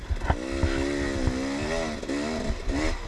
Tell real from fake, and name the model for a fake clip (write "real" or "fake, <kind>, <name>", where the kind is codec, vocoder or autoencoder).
real